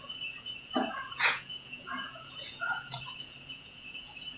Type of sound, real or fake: fake